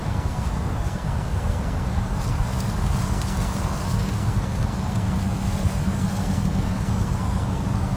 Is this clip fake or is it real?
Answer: fake